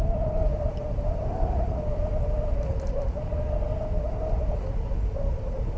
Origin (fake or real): real